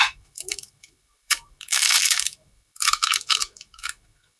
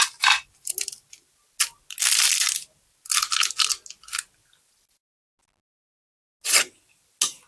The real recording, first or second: second